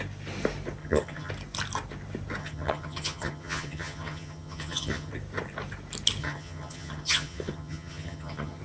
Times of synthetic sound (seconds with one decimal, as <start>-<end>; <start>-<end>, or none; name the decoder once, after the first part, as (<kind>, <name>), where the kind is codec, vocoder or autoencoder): 0.8-1.3 (vocoder, HiFi-GAN); 2.4-5.1; 6.2-8.6